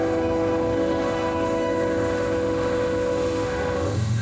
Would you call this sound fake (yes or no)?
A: yes